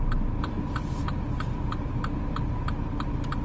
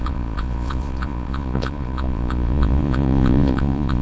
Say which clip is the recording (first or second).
first